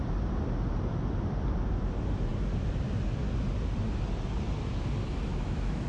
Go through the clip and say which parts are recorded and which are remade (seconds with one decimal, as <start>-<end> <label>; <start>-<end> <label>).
0.0-5.3 recorded; 5.3-5.9 remade